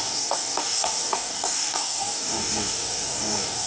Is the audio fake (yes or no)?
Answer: yes